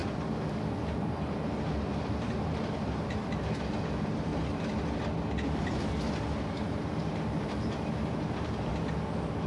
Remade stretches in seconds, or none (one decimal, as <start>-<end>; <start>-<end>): 0.8-4.3; 6.6-8.7